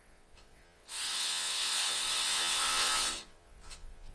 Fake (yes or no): yes